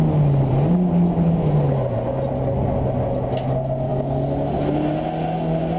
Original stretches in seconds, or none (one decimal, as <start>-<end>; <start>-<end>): 0.0-5.8

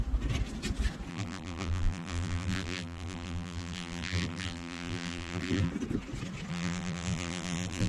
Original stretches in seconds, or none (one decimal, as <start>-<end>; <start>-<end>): 0.0-1.1; 5.7-6.5

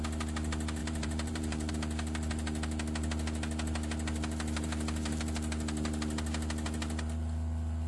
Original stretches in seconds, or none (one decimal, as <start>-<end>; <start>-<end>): 0.0-0.8; 1.7-7.9